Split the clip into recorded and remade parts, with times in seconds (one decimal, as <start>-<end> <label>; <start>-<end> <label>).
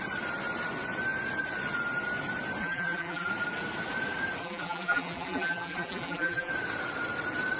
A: 0.0-2.6 recorded; 2.6-3.3 remade; 3.3-4.4 recorded; 4.4-6.5 remade; 6.5-7.6 recorded